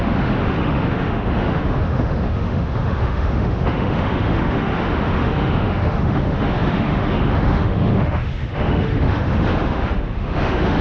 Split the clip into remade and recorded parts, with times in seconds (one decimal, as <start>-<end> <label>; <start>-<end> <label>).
0.0-10.8 remade